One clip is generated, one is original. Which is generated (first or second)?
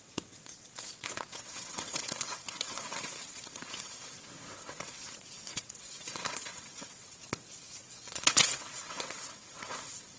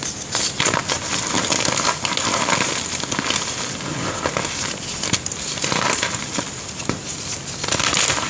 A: first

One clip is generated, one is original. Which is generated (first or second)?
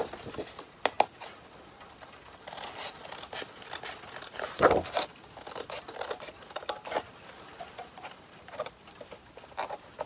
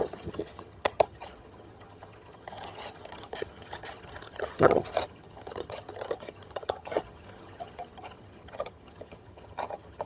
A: second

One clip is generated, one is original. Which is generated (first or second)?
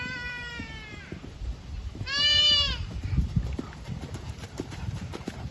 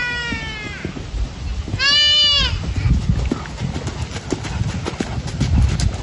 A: first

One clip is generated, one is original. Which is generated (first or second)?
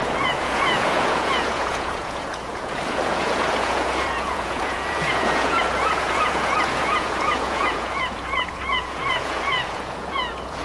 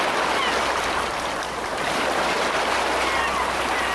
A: first